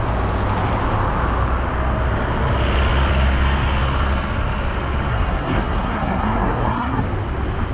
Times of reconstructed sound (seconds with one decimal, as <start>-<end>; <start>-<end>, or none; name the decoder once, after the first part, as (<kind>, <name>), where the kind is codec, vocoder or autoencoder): 5.1-7.0 (codec, SNAC)